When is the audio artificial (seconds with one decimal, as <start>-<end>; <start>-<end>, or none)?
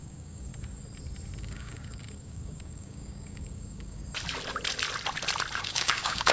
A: 0.0-0.5; 1.4-4.0; 5.6-6.3